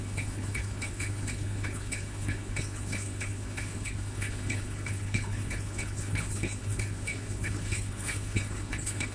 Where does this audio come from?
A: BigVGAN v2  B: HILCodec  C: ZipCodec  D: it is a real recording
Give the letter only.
B